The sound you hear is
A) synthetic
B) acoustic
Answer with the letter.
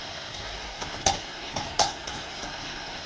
A